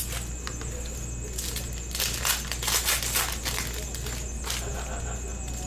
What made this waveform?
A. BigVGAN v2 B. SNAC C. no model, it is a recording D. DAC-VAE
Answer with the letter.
C